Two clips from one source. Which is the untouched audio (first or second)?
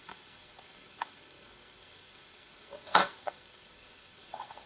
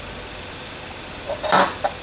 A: second